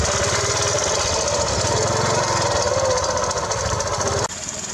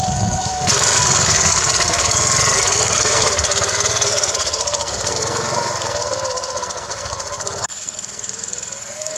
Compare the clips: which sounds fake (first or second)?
second